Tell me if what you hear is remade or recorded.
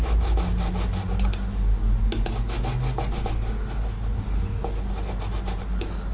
recorded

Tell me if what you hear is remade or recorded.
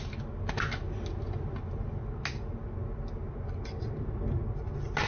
recorded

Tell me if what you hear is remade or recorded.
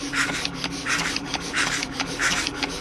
remade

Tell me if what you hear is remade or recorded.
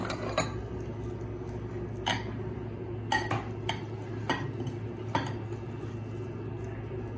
recorded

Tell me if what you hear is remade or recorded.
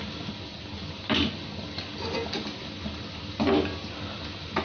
recorded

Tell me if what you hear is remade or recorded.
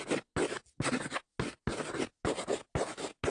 recorded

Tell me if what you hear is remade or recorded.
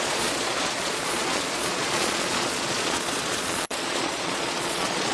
remade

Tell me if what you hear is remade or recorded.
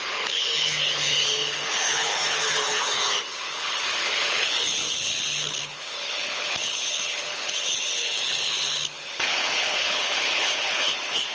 remade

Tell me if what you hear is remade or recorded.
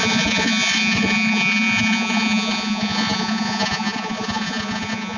remade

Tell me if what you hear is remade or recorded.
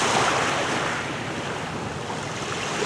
recorded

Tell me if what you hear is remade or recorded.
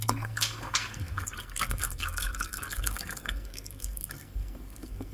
remade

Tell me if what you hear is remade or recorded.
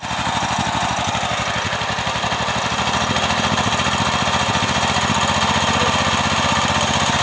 recorded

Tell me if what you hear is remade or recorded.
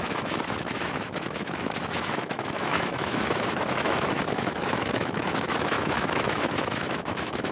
remade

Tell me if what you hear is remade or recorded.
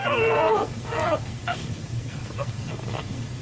remade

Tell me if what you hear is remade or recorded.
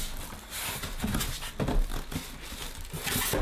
recorded